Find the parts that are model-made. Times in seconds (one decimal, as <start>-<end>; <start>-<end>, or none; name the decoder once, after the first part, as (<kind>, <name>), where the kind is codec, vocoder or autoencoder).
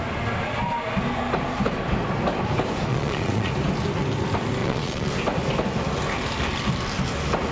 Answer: 2.9-3.5 (vocoder, Vocos); 4.6-5.1